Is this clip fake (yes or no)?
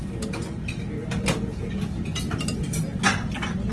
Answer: no